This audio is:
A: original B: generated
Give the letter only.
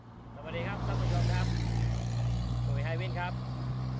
A